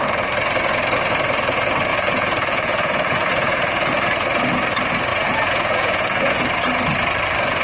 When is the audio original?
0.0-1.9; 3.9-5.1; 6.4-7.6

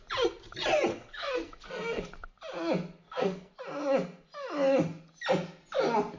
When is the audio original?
0.0-0.9; 2.1-3.0; 3.5-6.2

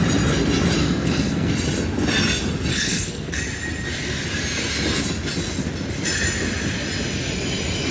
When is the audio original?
0.0-0.8; 1.5-2.7; 3.4-7.9

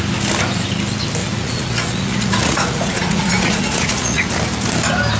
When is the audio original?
0.0-1.2; 4.3-5.2

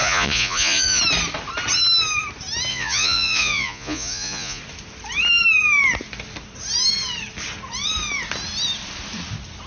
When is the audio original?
1.0-2.7; 4.6-9.7

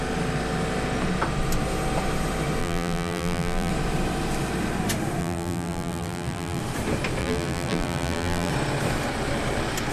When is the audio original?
0.0-2.6; 3.7-5.2; 6.6-7.2; 8.5-9.9

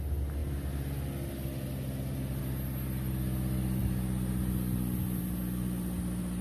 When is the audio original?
0.0-6.4

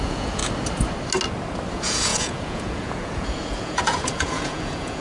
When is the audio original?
0.4-1.7